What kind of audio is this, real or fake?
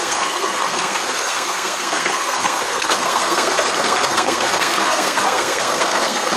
fake